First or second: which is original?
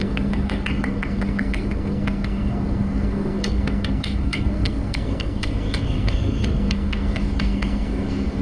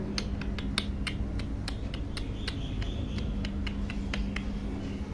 second